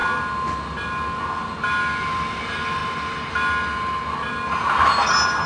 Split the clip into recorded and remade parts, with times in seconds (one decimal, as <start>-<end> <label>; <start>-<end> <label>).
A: 0.0-2.8 recorded; 2.8-3.3 remade; 3.3-5.5 recorded